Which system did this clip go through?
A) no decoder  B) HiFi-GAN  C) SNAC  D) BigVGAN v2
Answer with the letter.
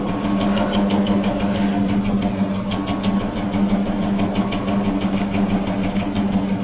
A